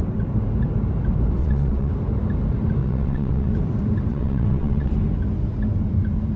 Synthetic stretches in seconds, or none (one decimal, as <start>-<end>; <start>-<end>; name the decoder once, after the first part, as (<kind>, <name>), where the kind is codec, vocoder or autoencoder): 1.4-1.9 (vocoder, WaveNeXt); 2.8-3.5; 4.1-4.9